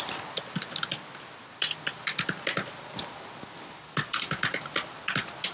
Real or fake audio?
real